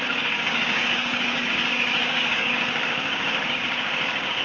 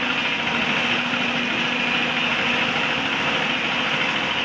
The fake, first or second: first